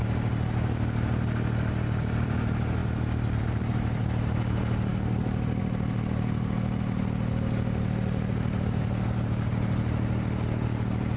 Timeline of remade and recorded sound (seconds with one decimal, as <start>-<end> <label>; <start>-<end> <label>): 0.0-11.2 recorded

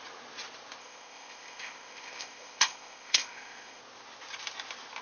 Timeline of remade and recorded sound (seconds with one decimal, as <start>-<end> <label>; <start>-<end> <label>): 0.0-0.8 recorded; 0.8-3.8 remade; 3.8-5.0 recorded

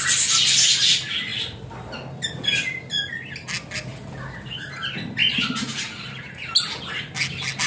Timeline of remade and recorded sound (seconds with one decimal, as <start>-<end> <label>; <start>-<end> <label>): 0.0-7.7 recorded

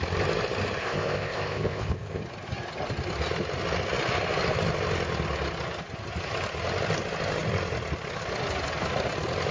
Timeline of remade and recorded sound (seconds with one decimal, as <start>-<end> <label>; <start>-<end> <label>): 0.0-0.8 recorded; 0.8-2.2 remade; 2.2-9.5 recorded

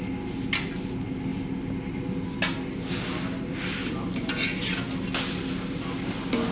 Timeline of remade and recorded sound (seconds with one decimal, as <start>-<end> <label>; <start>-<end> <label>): 0.0-6.5 recorded

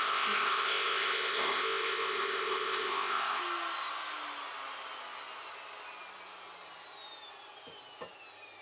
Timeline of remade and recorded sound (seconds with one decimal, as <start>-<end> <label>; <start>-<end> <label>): 0.0-3.4 remade; 3.4-8.6 recorded

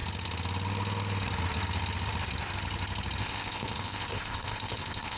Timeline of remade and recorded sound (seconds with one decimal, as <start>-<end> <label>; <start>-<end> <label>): 0.0-3.2 recorded; 3.2-5.2 remade